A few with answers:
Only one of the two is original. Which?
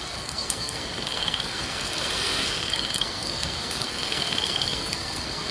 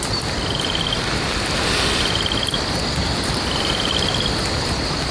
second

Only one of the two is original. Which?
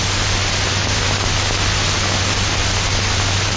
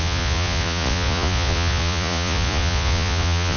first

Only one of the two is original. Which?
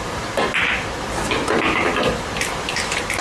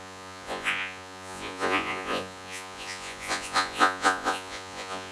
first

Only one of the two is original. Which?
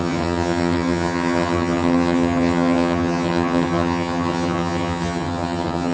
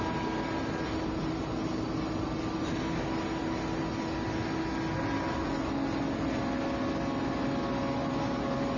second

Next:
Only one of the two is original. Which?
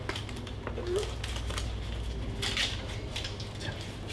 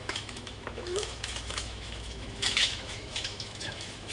first